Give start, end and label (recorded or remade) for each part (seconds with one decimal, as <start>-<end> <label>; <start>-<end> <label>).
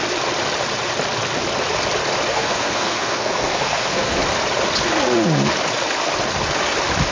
0.0-2.3 recorded; 2.3-4.2 remade; 4.2-7.1 recorded